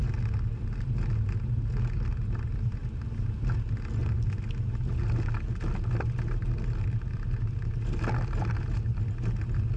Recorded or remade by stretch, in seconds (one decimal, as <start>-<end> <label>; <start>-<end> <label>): 0.0-9.8 recorded